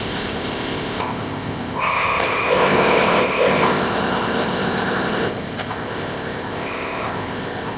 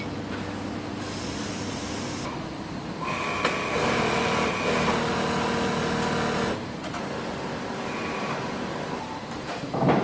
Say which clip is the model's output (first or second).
first